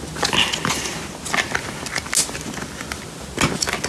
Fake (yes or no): no